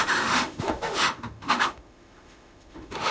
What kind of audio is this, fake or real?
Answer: fake